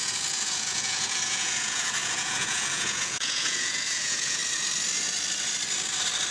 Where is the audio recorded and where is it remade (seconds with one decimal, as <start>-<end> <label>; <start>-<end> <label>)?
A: 0.0-4.4 remade; 4.4-6.3 recorded